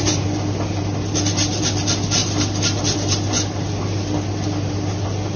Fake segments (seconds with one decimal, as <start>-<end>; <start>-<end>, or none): none

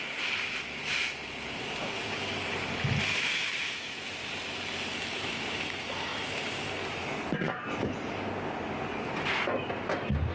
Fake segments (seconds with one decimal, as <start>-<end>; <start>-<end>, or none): 3.1-4.2; 5.1-5.6